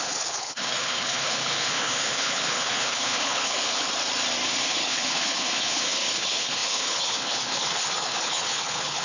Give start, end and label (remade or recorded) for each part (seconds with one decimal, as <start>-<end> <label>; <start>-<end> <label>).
0.0-3.9 remade; 3.9-4.5 recorded; 4.5-9.0 remade